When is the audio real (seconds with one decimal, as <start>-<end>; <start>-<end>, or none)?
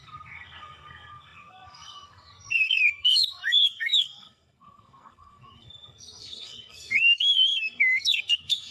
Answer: none